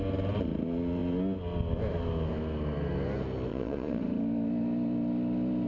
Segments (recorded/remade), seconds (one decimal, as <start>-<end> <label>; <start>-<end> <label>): 0.0-3.5 recorded; 3.5-4.0 remade; 4.0-5.7 recorded